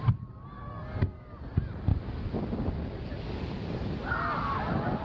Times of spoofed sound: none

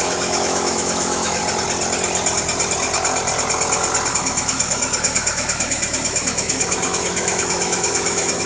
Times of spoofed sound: 0.0-1.4; 4.1-8.5

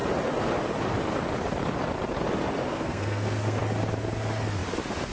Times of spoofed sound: 2.6-3.6

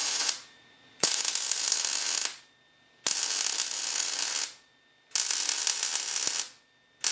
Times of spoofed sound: 0.0-1.2

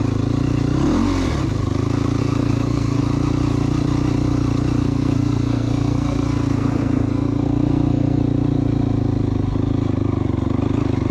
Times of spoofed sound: 2.2-3.0; 4.8-8.2

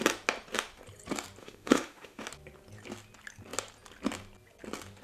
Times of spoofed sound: 1.4-2.2